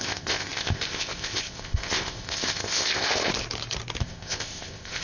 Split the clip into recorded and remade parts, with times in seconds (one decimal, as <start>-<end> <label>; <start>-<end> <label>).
0.0-3.3 remade; 3.3-4.0 recorded; 4.0-5.0 remade